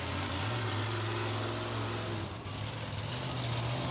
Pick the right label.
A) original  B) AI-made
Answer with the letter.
A